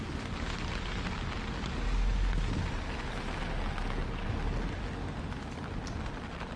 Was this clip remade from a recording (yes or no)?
no